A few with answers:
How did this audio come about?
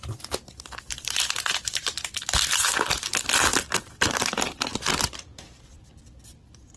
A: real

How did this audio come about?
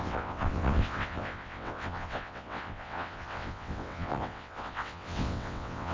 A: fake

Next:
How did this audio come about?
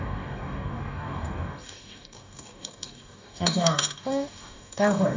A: fake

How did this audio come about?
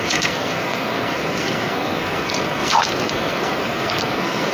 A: fake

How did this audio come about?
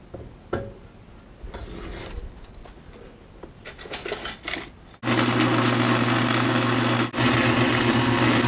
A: real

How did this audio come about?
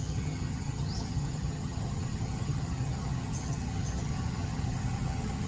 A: fake